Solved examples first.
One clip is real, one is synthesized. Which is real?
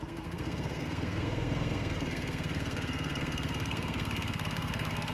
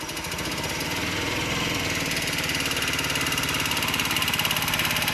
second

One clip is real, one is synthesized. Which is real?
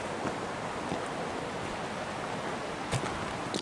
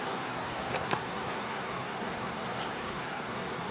first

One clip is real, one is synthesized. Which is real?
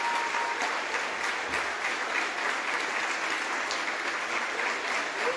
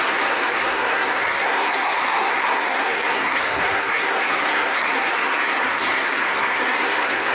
first